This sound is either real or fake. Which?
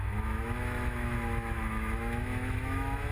fake